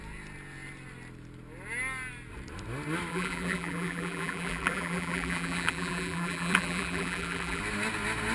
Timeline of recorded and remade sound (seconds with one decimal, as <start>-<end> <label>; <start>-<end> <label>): 0.0-3.1 recorded; 3.1-7.6 remade; 7.6-8.3 recorded